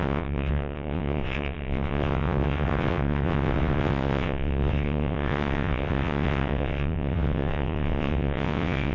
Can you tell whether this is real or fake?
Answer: fake